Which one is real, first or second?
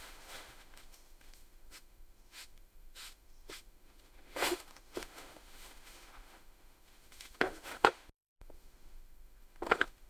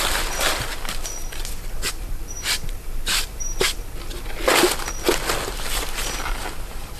second